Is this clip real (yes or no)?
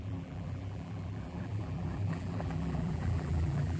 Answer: no